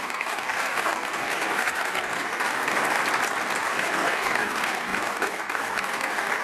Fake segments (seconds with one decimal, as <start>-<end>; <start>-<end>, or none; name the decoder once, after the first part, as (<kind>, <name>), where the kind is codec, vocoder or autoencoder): 0.0-3.0 (codec, DAC); 3.6-6.4